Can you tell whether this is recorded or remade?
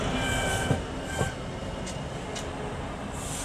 recorded